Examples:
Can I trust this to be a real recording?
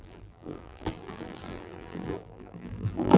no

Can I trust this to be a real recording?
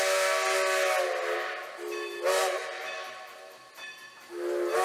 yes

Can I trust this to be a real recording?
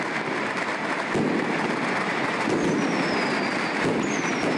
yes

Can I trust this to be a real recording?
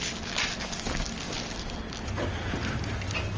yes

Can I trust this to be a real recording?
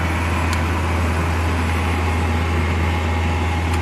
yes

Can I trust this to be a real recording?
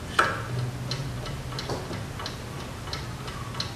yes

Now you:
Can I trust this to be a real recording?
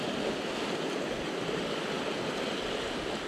yes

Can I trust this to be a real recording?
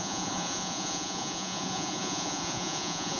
no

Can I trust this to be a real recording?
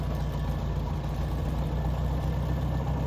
yes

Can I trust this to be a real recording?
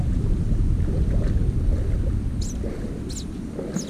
yes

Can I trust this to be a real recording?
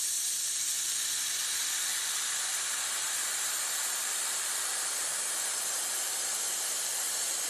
no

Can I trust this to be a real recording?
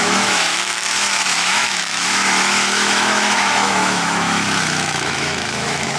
no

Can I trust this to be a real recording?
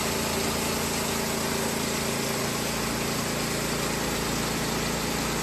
yes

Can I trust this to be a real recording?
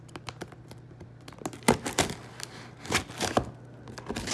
yes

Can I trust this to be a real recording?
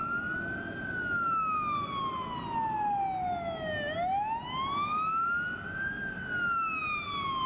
yes